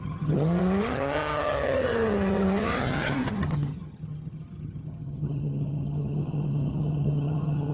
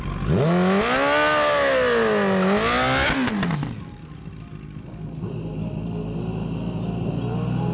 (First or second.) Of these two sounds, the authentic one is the second